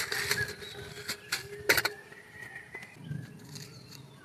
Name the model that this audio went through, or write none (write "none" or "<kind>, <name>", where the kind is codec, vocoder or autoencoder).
none